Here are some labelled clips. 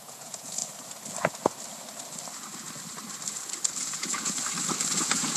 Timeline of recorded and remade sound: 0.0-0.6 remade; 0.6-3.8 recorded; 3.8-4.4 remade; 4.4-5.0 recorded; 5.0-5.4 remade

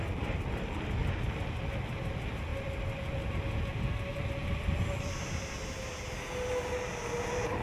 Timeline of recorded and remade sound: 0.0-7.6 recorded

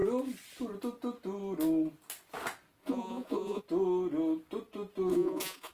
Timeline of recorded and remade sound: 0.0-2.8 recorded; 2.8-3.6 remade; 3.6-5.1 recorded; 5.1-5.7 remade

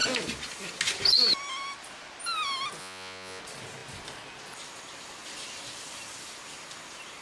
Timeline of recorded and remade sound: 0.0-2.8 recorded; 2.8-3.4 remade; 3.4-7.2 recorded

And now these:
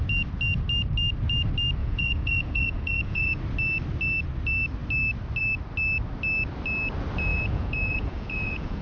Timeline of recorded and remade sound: 0.0-1.8 recorded; 1.8-3.4 remade; 3.4-7.3 recorded; 7.3-8.8 remade